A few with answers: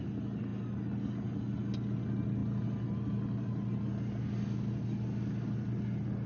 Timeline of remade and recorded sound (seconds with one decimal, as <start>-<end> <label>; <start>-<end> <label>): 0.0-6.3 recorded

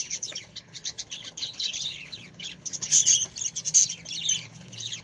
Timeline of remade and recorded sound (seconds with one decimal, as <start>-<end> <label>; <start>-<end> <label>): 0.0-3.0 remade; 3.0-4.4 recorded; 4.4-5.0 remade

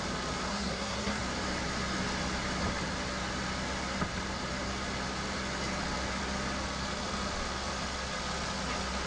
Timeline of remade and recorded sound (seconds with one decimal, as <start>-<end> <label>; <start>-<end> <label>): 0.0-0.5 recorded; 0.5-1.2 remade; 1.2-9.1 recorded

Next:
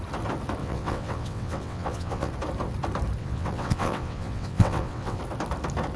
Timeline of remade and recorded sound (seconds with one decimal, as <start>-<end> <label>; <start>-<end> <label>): 0.0-0.6 recorded; 0.6-2.3 remade; 2.3-3.2 recorded; 3.2-5.2 remade; 5.2-6.0 recorded

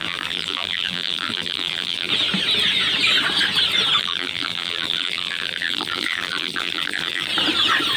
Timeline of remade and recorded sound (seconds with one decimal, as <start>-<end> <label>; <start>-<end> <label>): 0.0-2.1 remade; 2.1-4.0 recorded; 4.0-7.3 remade; 7.3-8.0 recorded

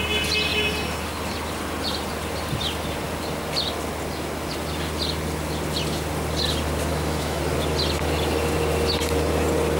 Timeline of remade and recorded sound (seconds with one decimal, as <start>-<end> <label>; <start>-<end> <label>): 0.0-6.9 recorded; 6.9-7.4 remade; 7.4-9.8 recorded

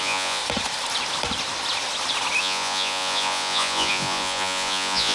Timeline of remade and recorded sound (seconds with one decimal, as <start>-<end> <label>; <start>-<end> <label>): 0.0-0.4 remade; 0.4-2.4 recorded; 2.4-5.1 remade

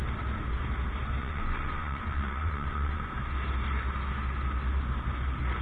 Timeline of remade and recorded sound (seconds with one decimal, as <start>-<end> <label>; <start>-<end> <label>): 0.0-1.2 recorded; 1.2-3.1 remade; 3.1-5.6 recorded